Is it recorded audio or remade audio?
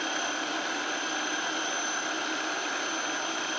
recorded